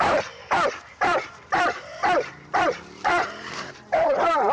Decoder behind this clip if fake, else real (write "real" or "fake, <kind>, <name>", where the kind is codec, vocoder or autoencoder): fake, vocoder, BigVGAN v2